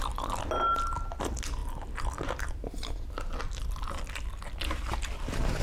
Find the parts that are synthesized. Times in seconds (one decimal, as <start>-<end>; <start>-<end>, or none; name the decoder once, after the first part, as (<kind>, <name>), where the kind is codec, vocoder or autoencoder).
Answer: none